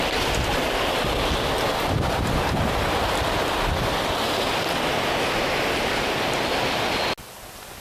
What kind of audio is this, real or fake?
real